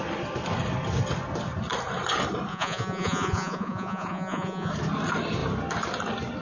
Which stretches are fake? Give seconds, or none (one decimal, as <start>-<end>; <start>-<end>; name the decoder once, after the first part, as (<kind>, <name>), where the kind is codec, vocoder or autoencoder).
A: 2.5-4.7 (vocoder, Vocos)